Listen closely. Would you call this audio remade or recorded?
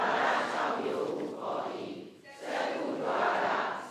remade